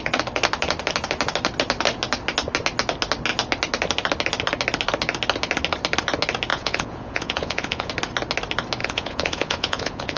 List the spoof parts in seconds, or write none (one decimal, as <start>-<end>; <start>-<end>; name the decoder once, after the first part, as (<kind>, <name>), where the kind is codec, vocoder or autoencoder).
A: 6.5-7.9 (vocoder, Vocos); 8.8-10.2